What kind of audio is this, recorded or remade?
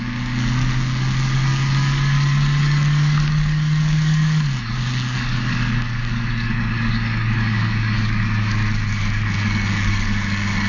remade